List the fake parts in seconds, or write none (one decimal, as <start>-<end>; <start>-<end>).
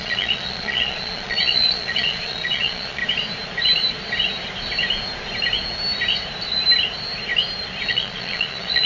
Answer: 0.0-3.0; 7.9-8.9